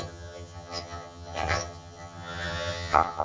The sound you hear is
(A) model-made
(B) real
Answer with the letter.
A